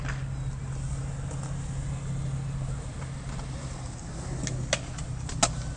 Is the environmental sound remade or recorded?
recorded